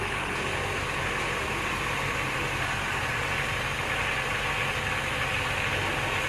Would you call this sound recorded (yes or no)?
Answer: yes